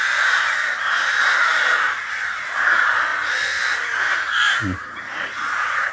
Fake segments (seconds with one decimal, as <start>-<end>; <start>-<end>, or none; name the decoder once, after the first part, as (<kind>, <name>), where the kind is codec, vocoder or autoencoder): 0.0-3.1 (vocoder, BigVGAN v2); 4.0-5.9